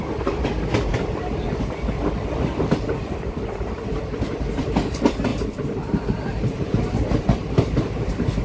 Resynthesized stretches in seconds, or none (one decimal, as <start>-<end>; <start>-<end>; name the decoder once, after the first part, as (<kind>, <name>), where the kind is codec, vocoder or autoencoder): none